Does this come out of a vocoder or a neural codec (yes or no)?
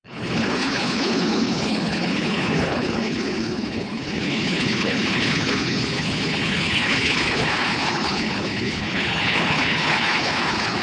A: yes